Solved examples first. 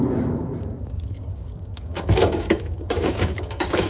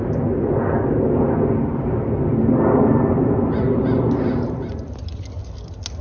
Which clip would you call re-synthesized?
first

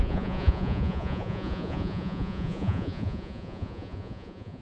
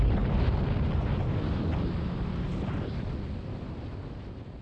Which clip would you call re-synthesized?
first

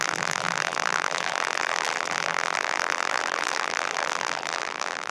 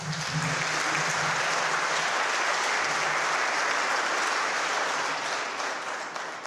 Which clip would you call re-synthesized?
first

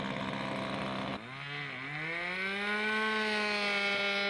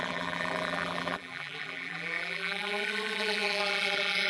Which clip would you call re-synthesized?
second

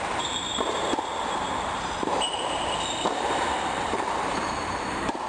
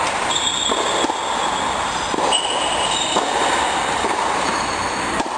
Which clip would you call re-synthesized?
first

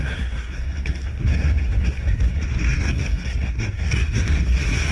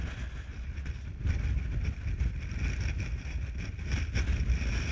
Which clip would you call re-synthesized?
first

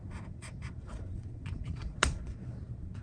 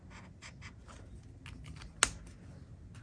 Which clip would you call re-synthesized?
first